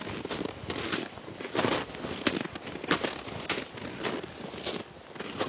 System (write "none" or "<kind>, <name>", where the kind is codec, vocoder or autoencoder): none